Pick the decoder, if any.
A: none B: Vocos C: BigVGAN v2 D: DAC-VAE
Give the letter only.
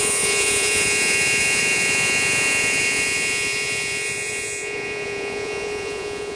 B